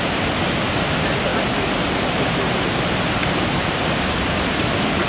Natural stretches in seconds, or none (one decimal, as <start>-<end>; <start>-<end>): 0.0-1.3; 2.8-3.2